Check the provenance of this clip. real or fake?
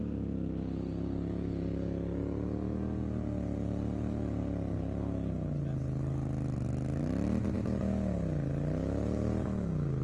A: real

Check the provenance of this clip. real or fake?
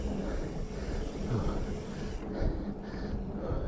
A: real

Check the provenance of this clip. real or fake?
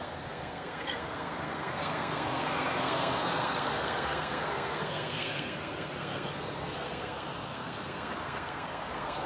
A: fake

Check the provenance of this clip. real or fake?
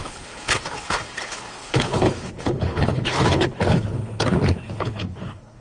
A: fake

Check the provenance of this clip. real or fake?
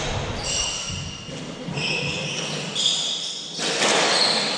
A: real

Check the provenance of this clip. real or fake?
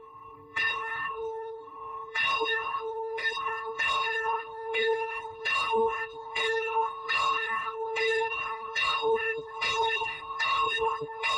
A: fake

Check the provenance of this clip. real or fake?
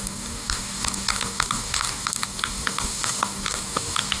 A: fake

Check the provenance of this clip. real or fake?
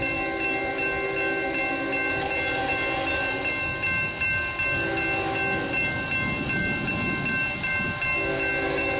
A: real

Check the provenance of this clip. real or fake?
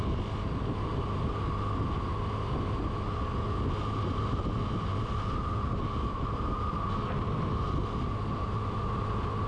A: real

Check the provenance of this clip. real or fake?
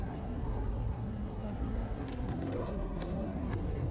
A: fake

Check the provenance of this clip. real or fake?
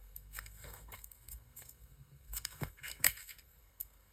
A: fake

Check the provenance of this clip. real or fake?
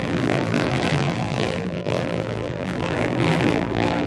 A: fake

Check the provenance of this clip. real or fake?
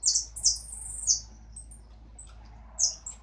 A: real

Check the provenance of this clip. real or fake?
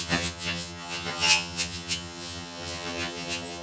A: fake